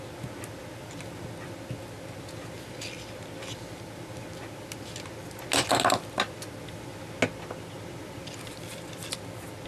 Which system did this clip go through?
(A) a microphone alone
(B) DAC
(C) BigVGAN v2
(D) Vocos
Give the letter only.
A